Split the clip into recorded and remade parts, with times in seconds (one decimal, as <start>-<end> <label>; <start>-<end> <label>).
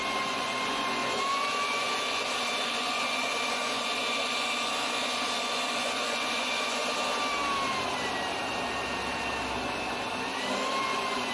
0.0-6.8 remade; 6.8-10.8 recorded; 10.8-11.3 remade